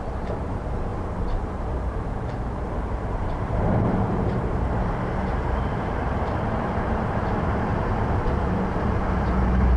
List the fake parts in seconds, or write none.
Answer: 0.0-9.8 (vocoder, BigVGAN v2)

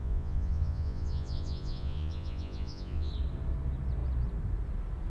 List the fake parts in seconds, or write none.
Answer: 0.0-3.1 (vocoder, Vocos)

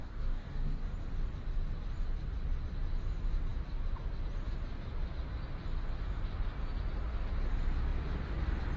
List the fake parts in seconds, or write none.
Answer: 0.0-0.9 (codec, DAC)

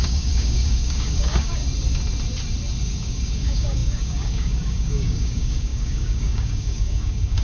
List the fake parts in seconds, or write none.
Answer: 0.0-1.6 (codec, DAC); 2.8-7.4

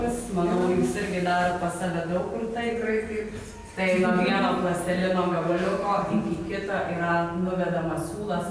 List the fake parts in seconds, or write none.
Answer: 0.6-1.5 (autoencoder, DAC-VAE); 5.0-6.0